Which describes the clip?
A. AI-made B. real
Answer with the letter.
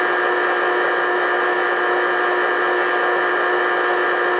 B